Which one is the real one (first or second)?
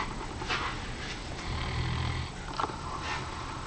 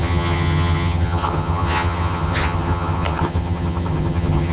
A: first